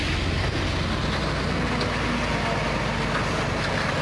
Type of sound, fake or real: real